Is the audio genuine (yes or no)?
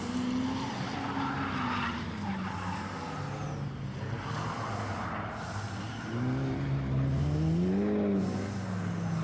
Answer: yes